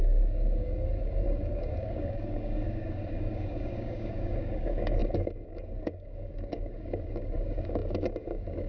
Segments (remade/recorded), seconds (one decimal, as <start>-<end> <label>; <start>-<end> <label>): 0.0-8.7 remade